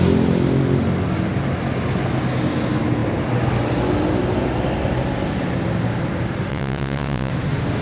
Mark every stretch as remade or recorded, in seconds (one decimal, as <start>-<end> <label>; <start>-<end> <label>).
0.0-6.5 recorded; 6.5-7.3 remade; 7.3-7.8 recorded